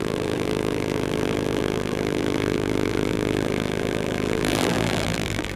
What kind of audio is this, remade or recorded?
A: remade